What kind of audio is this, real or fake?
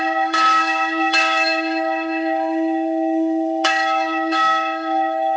fake